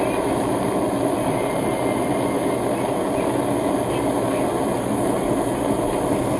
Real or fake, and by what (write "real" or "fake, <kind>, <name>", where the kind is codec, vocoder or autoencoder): real